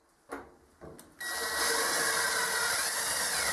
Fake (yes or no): no